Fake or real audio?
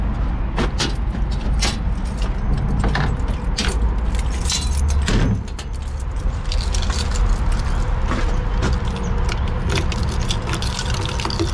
real